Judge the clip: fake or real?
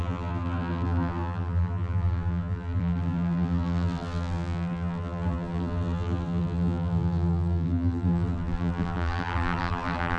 fake